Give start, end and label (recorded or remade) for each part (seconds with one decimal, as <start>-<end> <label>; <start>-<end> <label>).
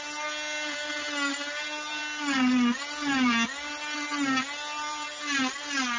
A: 0.0-6.0 recorded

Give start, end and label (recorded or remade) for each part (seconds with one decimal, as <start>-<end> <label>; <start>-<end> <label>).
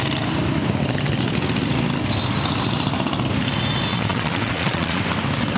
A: 0.0-3.9 recorded; 3.9-5.0 remade; 5.0-5.6 recorded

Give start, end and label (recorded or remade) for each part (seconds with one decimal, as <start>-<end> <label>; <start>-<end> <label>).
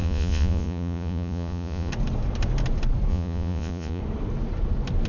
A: 0.0-1.9 remade; 1.9-3.1 recorded; 3.1-4.0 remade; 4.0-5.1 recorded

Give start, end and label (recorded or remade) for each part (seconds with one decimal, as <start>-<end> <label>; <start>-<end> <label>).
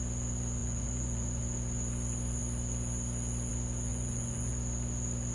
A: 0.0-0.6 recorded; 0.6-1.4 remade; 1.4-3.9 recorded; 3.9-4.5 remade; 4.5-5.3 recorded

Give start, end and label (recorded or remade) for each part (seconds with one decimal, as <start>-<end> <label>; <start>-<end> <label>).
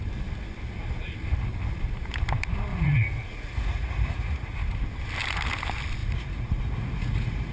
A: 0.0-2.7 recorded; 2.7-4.6 remade; 4.6-6.0 recorded; 6.0-7.5 remade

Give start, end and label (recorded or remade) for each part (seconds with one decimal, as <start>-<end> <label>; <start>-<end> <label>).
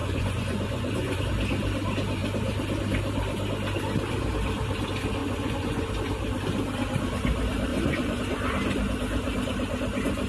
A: 0.0-1.2 remade; 1.2-5.2 recorded; 5.2-5.9 remade; 5.9-7.7 recorded; 7.7-8.2 remade; 8.2-10.3 recorded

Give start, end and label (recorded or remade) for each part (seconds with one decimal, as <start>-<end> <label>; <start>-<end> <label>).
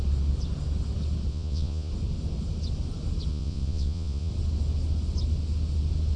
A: 0.0-1.3 recorded; 1.3-1.9 remade; 1.9-3.3 recorded; 3.3-4.3 remade; 4.3-6.2 recorded